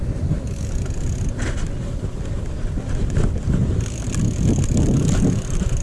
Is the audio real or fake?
real